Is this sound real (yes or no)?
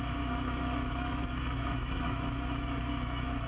no